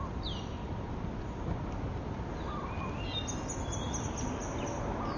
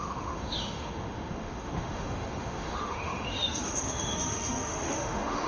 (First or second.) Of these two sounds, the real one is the first